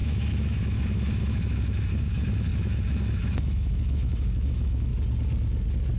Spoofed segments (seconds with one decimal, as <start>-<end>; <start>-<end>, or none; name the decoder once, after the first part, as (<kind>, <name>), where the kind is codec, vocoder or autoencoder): 0.0-4.9 (autoencoder, DAC-VAE)